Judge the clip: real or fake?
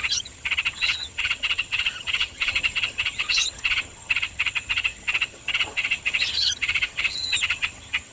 fake